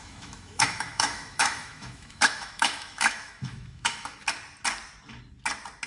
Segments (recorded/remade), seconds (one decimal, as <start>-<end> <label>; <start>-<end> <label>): 0.0-4.2 remade; 4.2-5.9 recorded